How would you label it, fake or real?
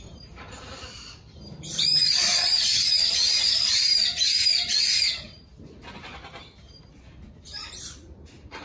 fake